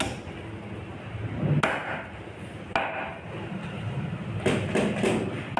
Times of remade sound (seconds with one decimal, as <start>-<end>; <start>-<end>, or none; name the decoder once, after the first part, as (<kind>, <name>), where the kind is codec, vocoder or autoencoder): none